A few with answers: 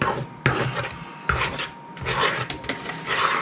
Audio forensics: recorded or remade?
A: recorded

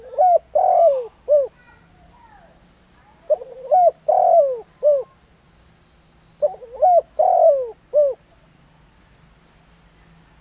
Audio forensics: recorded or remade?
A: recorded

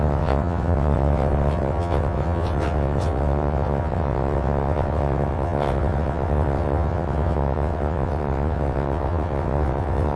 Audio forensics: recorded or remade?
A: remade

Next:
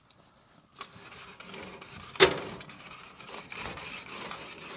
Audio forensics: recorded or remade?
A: recorded